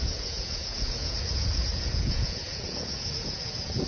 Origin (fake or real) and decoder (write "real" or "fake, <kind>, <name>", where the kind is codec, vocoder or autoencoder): fake, vocoder, Vocos